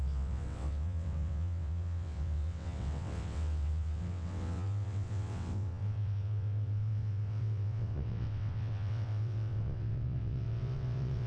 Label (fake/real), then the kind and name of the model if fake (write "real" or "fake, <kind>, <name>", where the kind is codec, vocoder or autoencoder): fake, vocoder, WaveNeXt